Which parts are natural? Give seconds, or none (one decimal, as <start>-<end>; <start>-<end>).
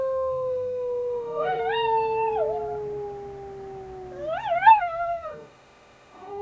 1.6-4.7